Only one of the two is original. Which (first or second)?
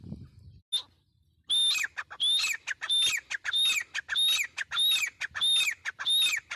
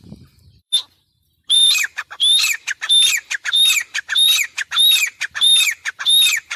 first